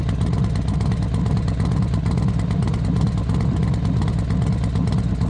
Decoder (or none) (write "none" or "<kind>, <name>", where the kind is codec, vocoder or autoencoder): none